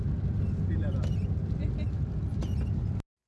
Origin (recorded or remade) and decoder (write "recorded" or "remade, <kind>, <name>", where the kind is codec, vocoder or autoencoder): recorded